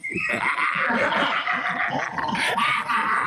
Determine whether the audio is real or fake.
real